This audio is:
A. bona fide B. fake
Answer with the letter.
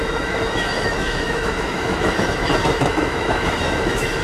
B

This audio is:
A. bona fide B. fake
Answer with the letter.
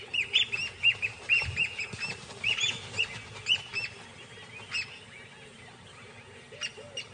A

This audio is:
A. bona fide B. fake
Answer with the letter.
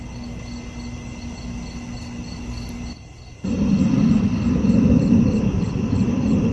A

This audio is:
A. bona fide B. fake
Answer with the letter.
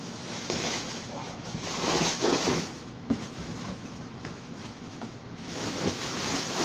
B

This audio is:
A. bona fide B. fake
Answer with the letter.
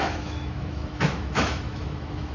B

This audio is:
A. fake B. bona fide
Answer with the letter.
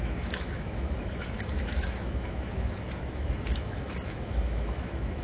A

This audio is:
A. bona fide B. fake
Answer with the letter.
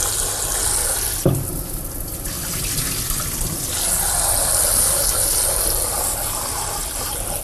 A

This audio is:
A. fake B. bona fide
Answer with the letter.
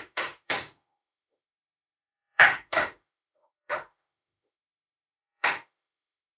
A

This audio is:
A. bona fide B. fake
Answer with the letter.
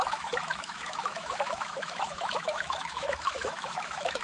B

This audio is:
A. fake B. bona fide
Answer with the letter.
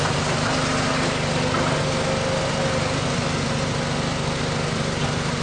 B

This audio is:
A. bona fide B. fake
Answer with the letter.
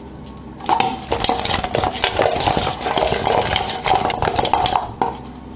A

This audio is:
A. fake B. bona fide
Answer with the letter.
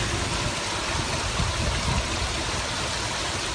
B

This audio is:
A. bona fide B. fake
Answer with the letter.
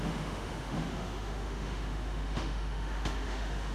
B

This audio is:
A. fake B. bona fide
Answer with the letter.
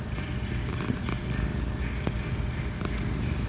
B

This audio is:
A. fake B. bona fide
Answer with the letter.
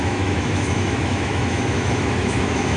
A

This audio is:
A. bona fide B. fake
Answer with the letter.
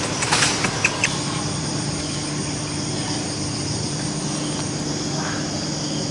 A